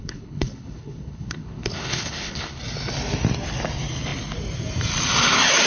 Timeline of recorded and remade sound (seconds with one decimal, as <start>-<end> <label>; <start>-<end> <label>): 0.0-2.6 remade; 2.6-5.7 recorded